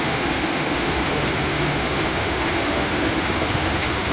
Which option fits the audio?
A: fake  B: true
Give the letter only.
A